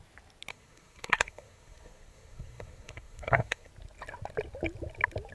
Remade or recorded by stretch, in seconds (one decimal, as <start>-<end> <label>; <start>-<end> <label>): 0.0-0.5 recorded; 0.5-3.7 remade; 3.7-5.3 recorded